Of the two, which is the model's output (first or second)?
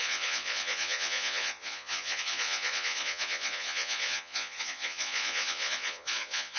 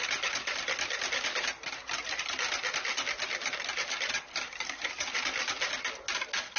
first